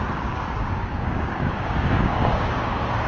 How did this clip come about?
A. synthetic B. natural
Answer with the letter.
A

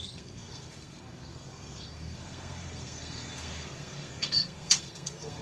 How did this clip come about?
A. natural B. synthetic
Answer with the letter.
B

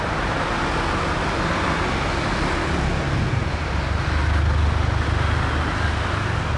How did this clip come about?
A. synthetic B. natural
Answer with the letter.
B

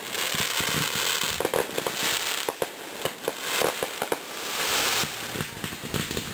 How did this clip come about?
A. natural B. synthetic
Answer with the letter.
A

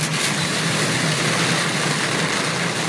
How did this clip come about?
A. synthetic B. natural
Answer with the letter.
B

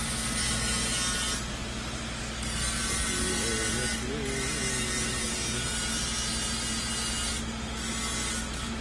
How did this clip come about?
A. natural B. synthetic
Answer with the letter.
A